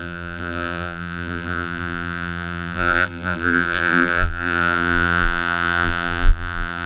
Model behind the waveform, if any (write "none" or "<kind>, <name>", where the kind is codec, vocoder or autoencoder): vocoder, BigVGAN v2